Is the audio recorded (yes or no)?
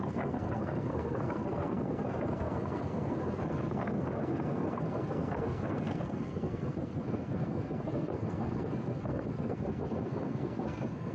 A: no